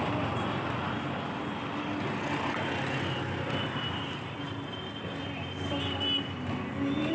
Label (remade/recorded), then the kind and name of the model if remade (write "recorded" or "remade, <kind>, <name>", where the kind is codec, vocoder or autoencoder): recorded